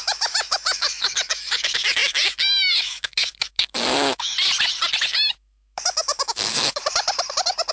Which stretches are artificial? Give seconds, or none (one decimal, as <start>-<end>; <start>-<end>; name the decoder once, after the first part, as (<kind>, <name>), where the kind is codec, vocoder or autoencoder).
0.0-4.3 (autoencoder, DAC-VAE); 5.0-6.8